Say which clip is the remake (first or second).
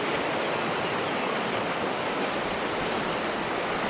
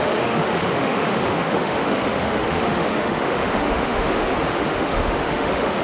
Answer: second